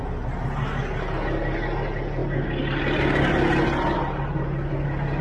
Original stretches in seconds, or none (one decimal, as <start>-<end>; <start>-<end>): 0.0-5.2